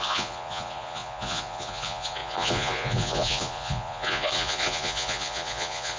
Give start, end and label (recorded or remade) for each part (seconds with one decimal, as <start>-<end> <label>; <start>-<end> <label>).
0.0-6.0 remade